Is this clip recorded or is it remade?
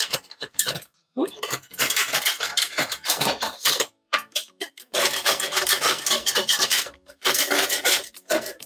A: remade